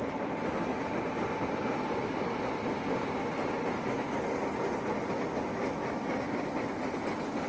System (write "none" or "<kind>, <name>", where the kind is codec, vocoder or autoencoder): none